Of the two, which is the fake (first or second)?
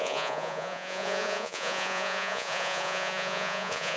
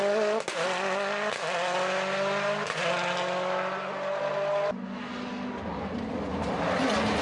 first